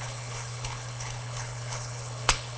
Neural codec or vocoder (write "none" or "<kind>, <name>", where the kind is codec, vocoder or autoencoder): codec, HILCodec